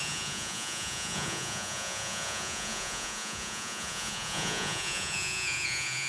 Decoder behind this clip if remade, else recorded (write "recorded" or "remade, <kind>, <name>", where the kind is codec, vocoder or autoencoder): remade, vocoder, Vocos